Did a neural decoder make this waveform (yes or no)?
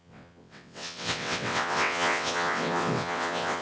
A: yes